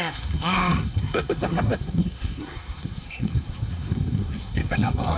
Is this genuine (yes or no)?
no